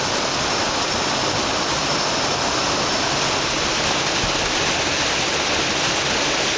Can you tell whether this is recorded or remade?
recorded